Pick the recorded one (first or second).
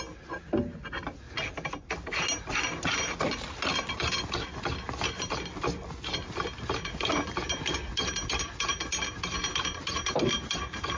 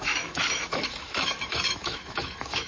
first